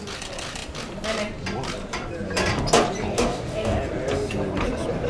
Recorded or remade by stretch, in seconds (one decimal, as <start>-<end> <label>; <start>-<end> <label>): 0.0-3.1 recorded; 3.1-3.8 remade; 3.8-5.1 recorded